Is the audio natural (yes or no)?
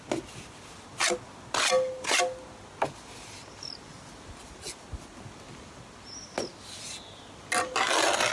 yes